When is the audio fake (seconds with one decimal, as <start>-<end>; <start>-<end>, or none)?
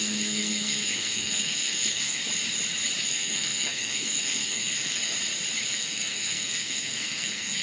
0.0-2.2; 3.1-5.1; 5.7-7.6